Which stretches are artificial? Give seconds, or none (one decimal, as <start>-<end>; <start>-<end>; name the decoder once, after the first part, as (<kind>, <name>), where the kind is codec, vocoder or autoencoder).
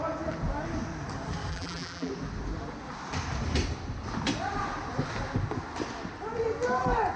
1.5-2.1 (vocoder, BigVGAN v2)